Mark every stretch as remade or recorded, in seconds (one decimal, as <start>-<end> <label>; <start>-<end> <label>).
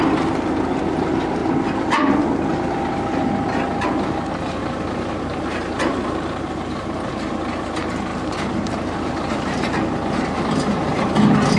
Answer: 0.0-4.6 recorded; 4.6-7.1 remade; 7.1-8.1 recorded; 8.1-11.0 remade; 11.0-11.6 recorded